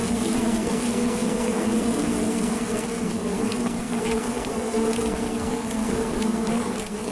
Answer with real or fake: fake